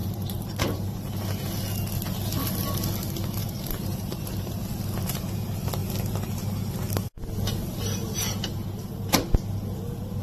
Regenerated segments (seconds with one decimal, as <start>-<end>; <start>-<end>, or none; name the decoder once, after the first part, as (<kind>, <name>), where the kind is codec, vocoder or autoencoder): 0.0-1.1 (vocoder, BigVGAN v2); 3.4-4.6